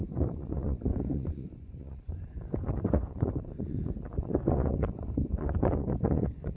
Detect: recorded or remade remade